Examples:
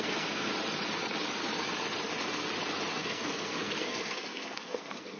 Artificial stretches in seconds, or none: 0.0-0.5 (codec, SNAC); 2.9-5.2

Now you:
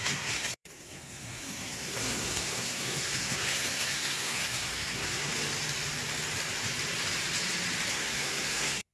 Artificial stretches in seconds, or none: 0.0-5.3 (codec, SNAC); 7.9-8.9

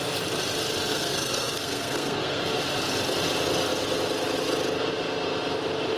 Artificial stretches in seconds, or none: 0.9-2.4 (codec, SNAC)

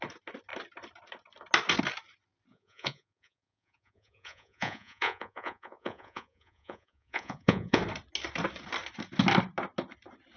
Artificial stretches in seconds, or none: 2.5-7.8 (vocoder, Vocos)

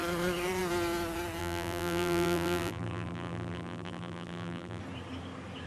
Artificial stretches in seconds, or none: 1.4-4.8 (vocoder, BigVGAN v2)

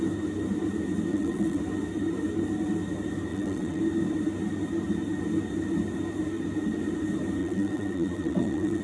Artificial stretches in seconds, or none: 1.1-1.6 (vocoder, WaveNeXt); 3.3-3.8; 7.4-8.8

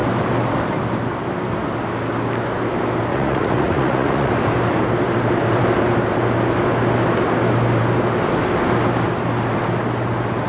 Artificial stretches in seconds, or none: 3.1-4.3 (vocoder, Vocos)

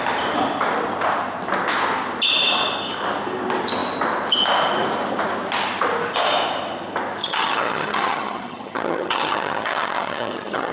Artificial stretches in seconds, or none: 7.2-10.7 (vocoder, HiFi-GAN)